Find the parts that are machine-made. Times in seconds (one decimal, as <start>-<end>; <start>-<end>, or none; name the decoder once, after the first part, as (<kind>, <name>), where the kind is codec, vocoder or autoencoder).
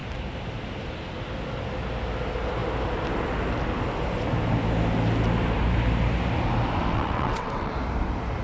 6.9-7.7 (vocoder, WaveNeXt)